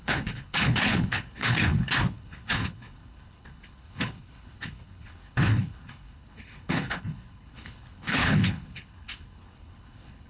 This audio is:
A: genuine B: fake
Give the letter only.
B